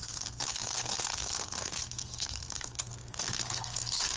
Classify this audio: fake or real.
fake